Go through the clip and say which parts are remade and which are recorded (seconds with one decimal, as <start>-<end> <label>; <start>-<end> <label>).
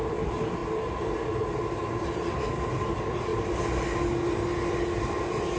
0.0-5.6 recorded